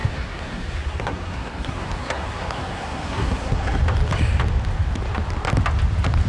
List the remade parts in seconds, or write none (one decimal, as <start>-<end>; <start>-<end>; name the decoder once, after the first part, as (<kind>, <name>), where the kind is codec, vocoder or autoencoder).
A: 0.0-3.8 (codec, SNAC)